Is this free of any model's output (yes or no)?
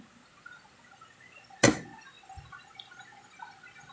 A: yes